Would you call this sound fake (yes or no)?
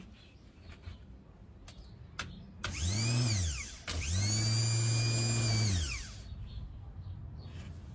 no